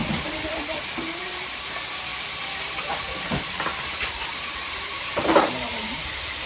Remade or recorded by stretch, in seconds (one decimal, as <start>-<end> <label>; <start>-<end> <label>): 0.0-2.1 remade; 2.1-2.6 recorded; 2.6-6.5 remade